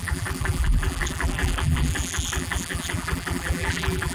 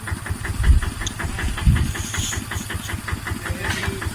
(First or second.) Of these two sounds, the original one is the second